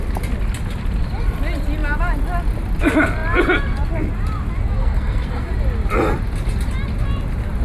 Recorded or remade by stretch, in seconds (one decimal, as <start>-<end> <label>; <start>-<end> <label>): 0.0-4.8 recorded; 4.8-5.5 remade; 5.5-7.6 recorded